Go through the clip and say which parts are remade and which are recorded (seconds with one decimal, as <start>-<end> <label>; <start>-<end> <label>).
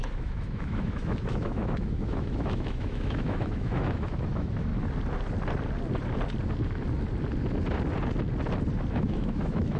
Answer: 0.0-4.7 remade; 4.7-8.9 recorded; 8.9-9.8 remade